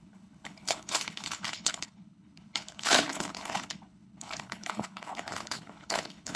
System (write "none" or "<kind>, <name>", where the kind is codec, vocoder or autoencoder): codec, HILCodec